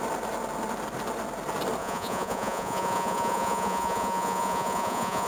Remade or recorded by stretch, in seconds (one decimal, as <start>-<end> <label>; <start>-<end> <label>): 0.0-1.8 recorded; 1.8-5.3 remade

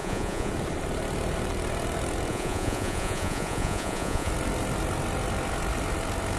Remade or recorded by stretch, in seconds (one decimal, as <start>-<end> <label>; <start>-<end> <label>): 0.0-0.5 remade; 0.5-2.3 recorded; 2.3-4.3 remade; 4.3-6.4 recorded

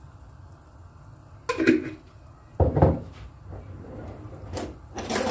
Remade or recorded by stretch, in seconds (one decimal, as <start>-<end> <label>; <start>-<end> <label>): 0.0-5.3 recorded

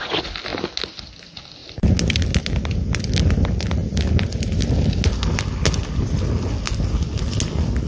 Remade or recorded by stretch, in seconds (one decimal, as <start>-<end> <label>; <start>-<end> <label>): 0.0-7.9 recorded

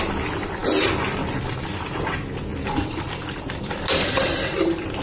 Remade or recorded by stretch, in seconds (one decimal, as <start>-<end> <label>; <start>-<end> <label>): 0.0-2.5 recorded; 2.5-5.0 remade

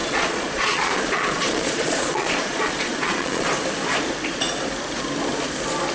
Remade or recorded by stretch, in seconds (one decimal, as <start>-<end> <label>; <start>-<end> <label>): 0.0-3.5 remade; 3.5-5.9 recorded

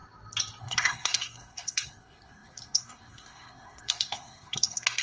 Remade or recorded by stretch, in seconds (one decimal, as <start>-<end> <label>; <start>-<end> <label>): 0.0-0.6 recorded; 0.6-5.0 remade